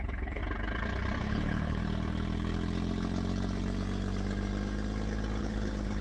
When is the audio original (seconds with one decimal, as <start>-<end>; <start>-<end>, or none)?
0.4-1.2; 1.8-5.4